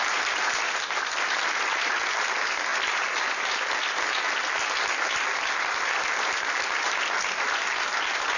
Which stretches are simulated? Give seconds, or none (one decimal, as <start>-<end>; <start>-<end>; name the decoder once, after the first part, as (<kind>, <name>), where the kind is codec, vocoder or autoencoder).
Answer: none